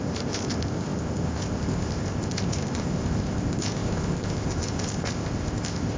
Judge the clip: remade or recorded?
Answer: remade